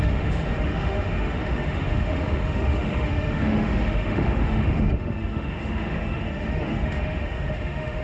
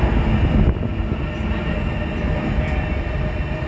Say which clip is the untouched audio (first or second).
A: second